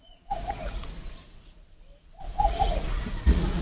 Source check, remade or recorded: remade